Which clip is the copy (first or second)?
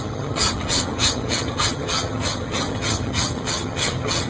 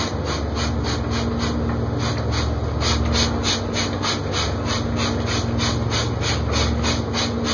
first